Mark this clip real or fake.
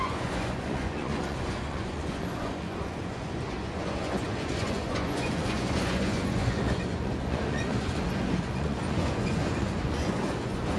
fake